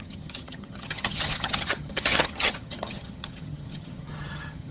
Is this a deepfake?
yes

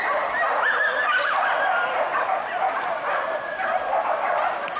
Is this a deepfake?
no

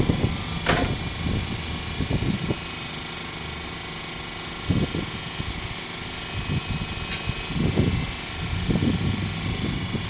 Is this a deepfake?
no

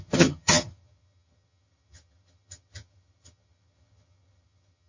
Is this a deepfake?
yes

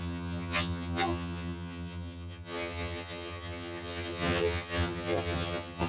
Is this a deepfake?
yes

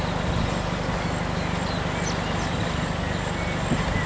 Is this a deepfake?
no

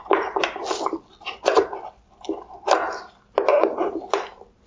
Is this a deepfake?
no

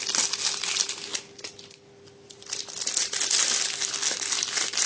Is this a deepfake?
no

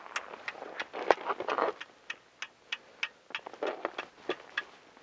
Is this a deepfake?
no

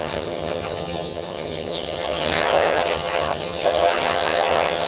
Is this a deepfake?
yes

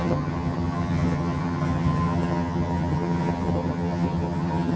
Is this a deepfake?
yes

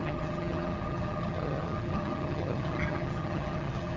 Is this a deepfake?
yes